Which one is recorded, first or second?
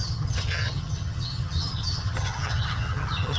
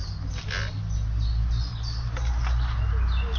second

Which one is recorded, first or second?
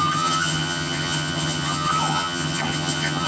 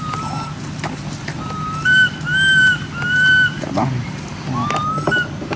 second